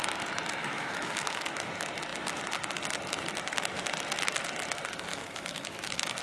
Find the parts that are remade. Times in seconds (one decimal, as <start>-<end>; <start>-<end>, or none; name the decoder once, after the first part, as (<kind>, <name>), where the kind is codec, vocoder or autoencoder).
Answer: 0.6-1.7 (autoencoder, DAC-VAE); 5.1-6.2